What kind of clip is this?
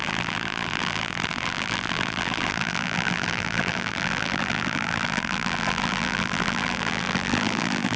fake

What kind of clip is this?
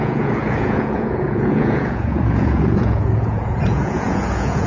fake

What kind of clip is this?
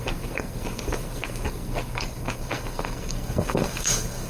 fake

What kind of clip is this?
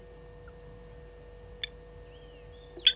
real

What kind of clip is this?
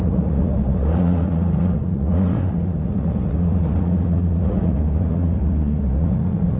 fake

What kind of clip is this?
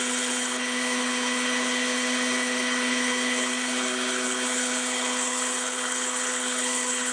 fake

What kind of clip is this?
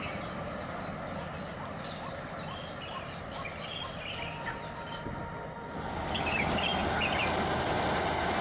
real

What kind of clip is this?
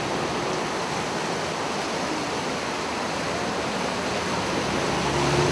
real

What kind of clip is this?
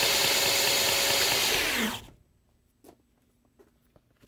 real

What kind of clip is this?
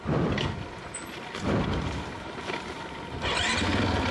real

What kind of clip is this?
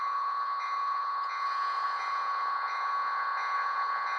fake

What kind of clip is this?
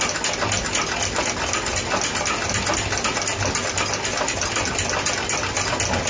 real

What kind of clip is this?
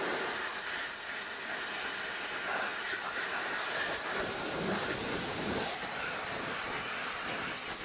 real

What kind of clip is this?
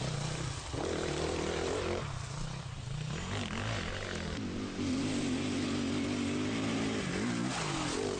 real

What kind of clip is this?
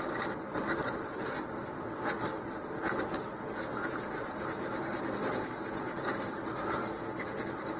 real